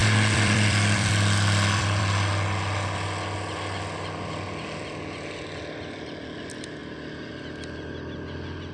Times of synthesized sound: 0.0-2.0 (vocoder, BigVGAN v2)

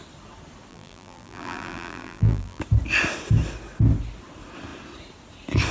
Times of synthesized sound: 0.7-2.6 (vocoder, BigVGAN v2)

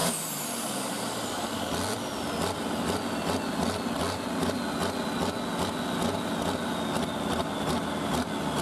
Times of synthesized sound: 0.0-1.3 (vocoder, BigVGAN v2)